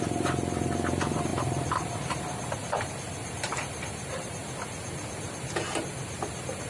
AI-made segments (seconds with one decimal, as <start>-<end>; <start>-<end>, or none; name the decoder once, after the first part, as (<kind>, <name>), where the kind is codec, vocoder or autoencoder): 0.0-4.4 (vocoder, BigVGAN v2); 6.3-6.7